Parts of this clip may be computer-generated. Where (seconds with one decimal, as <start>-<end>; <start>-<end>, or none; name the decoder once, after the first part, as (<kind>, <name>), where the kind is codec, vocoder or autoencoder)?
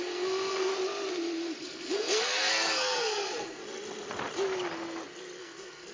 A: 0.0-0.7 (codec, SNAC); 1.6-3.6; 5.4-5.9